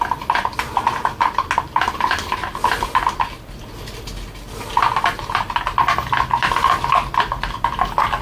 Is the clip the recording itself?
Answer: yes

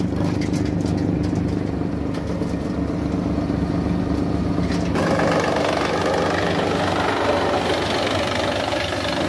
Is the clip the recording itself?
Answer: yes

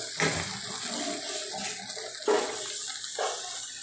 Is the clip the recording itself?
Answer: yes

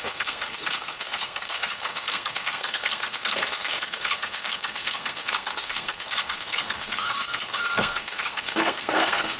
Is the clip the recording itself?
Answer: no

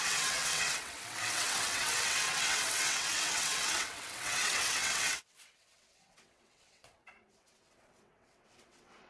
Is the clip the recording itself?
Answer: no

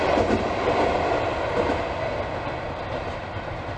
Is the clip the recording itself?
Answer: yes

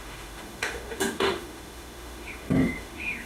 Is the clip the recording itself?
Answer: no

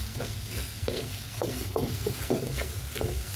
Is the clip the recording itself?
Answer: no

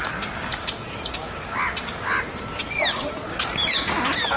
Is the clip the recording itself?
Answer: yes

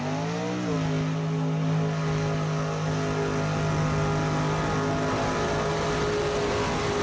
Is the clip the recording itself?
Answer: yes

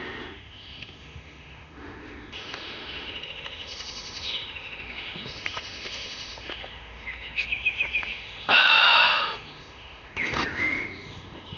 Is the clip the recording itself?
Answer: no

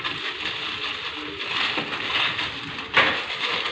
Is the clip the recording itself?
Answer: yes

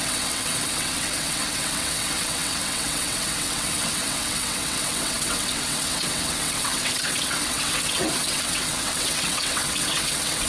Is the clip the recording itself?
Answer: no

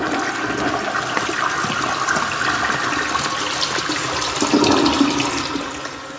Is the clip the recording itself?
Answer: yes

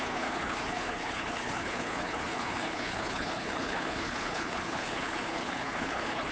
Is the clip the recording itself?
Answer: no